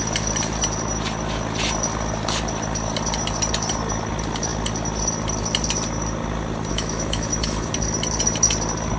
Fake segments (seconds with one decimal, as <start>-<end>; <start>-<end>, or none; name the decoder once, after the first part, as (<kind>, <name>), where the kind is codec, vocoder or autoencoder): 6.7-7.7 (autoencoder, DAC-VAE)